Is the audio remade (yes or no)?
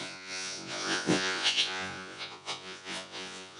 yes